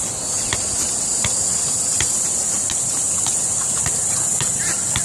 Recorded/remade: recorded